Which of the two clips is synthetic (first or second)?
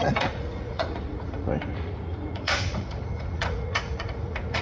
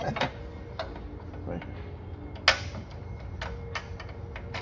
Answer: first